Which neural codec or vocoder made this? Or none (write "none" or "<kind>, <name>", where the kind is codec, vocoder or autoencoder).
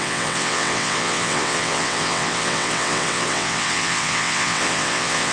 vocoder, WaveNeXt